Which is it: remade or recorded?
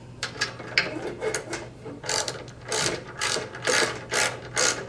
remade